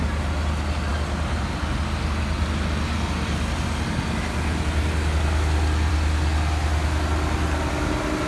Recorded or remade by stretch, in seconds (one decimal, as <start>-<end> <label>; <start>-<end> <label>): 0.0-8.3 recorded